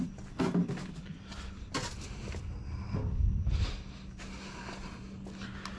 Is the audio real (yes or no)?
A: yes